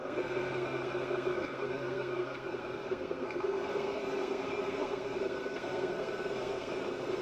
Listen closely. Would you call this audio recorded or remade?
remade